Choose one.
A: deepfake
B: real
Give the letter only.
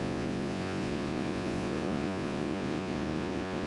A